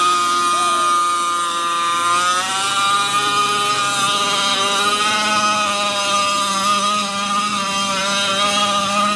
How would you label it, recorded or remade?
recorded